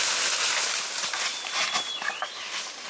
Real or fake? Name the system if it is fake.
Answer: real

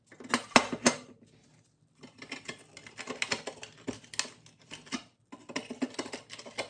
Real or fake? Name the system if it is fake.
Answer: real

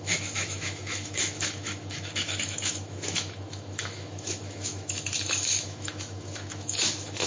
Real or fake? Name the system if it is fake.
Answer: fake, autoencoder, DAC-VAE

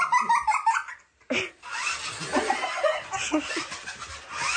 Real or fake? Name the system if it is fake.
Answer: real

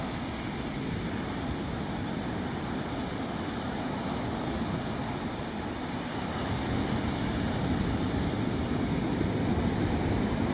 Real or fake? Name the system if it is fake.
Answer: real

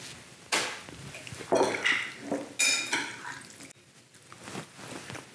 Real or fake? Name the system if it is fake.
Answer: real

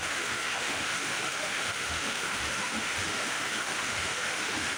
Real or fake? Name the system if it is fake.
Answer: fake, autoencoder, DAC-VAE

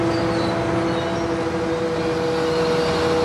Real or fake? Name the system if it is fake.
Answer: real